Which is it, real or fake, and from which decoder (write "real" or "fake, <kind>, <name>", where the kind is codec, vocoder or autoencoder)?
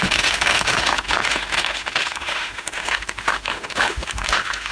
fake, autoencoder, DAC-VAE